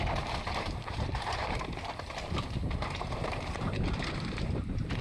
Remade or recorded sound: remade